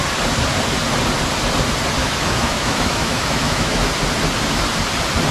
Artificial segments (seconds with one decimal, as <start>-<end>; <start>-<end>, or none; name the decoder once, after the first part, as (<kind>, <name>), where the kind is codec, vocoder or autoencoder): 2.0-3.9 (autoencoder, DAC-VAE)